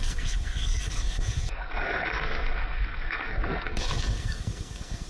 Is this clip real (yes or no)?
no